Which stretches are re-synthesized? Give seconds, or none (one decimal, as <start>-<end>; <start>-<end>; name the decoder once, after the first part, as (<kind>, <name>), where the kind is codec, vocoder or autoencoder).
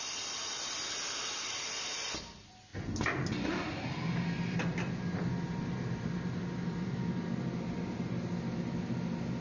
none